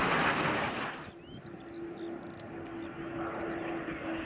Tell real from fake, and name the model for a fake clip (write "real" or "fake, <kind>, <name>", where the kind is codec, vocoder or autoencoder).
real